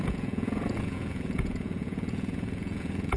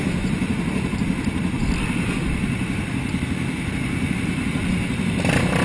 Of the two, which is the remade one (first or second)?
first